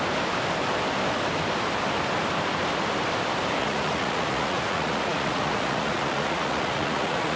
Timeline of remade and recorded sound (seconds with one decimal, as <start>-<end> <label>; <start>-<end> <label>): 0.0-3.6 recorded; 3.6-7.4 remade